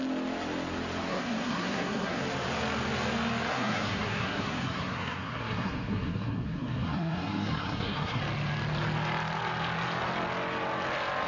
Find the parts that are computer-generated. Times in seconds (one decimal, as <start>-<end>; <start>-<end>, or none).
1.1-2.2; 3.5-8.2